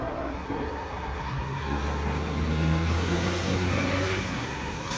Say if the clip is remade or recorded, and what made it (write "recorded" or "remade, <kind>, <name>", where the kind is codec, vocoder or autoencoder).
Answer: remade, codec, SNAC